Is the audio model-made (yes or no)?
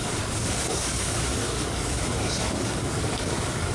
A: yes